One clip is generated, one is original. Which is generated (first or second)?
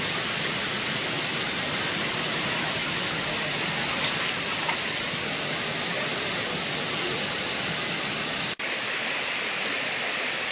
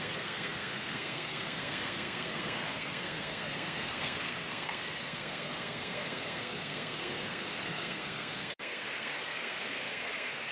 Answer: second